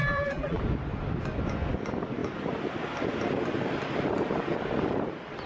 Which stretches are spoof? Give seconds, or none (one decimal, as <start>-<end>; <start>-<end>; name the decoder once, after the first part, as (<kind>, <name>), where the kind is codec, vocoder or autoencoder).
0.0-0.6 (vocoder, BigVGAN v2)

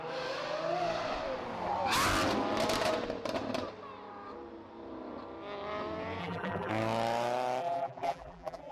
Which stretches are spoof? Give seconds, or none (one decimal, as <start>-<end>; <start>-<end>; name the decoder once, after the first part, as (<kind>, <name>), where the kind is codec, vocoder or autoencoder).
6.2-6.7 (vocoder, BigVGAN v2); 7.6-8.7